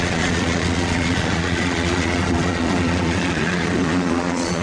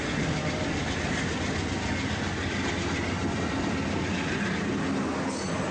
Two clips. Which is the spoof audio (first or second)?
first